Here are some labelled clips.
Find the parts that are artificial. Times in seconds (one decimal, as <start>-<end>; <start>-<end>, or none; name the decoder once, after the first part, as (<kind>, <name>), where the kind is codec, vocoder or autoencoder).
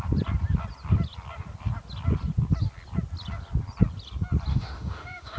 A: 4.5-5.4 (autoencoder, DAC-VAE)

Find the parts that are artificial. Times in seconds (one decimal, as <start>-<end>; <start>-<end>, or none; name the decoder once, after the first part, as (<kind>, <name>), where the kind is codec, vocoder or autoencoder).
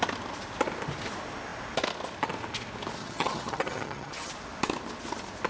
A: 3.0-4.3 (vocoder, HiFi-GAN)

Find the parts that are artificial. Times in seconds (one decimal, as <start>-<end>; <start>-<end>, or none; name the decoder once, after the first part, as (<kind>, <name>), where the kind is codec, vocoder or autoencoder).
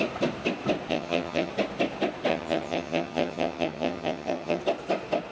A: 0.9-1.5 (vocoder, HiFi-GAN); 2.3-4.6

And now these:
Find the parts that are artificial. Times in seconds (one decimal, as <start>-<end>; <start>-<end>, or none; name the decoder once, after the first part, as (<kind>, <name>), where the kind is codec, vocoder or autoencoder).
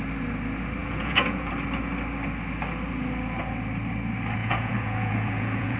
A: 0.8-1.5 (vocoder, Vocos); 4.4-5.8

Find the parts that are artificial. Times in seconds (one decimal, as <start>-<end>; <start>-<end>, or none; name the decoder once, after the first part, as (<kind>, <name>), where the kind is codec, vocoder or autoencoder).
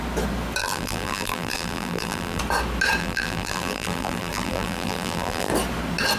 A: 0.6-2.4 (vocoder, BigVGAN v2); 3.0-5.5